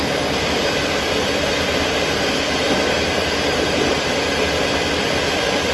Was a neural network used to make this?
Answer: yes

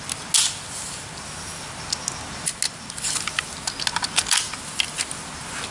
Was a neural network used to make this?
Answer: no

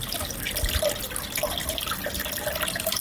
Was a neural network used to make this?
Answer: no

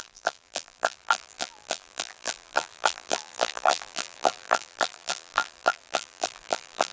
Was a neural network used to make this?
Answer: yes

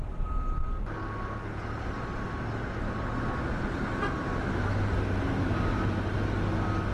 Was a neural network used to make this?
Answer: no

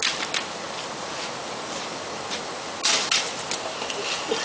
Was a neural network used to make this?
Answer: no